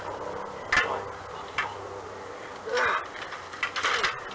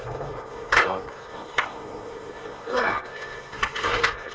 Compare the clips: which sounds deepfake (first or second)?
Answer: second